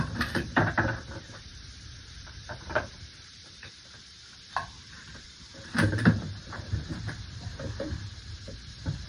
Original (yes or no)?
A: no